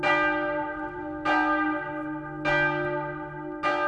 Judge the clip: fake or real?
real